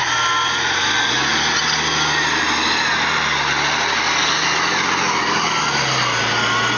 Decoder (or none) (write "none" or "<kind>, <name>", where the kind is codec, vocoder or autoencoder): none